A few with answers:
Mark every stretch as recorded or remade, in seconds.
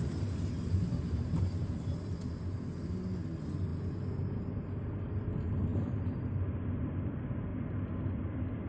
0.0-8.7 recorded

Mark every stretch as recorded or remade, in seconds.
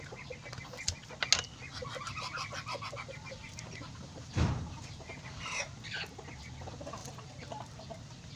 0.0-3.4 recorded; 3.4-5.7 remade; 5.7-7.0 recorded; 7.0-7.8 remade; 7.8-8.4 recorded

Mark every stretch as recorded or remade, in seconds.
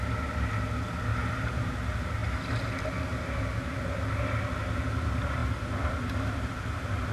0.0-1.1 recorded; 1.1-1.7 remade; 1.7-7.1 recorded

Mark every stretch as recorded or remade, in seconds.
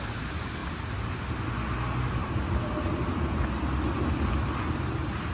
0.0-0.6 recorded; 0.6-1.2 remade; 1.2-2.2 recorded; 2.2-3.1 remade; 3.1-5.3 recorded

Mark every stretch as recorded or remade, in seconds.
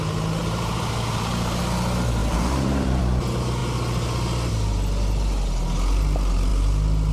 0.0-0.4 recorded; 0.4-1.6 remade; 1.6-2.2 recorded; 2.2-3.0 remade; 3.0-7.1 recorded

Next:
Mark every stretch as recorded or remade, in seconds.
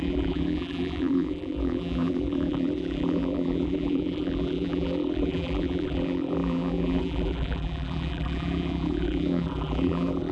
0.0-10.3 remade